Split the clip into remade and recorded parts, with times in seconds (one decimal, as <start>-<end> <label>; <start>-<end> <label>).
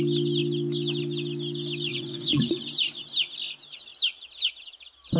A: 0.0-1.9 recorded; 1.9-2.6 remade; 2.6-5.2 recorded